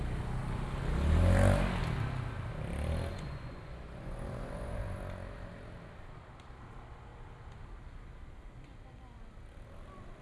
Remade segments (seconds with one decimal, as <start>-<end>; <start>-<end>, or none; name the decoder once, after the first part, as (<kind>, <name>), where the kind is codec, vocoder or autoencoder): 3.1-5.0 (vocoder, Vocos)